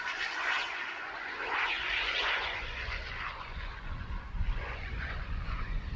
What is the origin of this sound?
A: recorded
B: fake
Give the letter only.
B